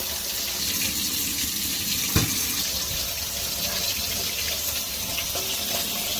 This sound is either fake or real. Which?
real